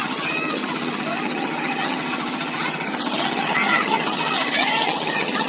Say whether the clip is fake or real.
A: fake